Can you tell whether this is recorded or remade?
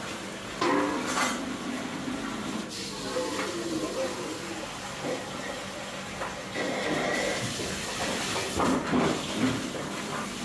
recorded